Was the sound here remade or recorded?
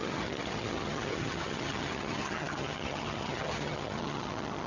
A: remade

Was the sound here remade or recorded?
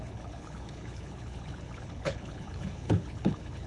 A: remade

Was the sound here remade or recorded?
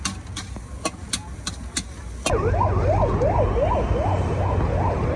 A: recorded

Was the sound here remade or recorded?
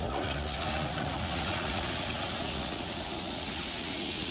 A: remade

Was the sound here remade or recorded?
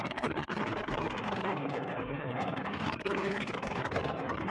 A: remade